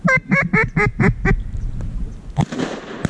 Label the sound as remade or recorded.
recorded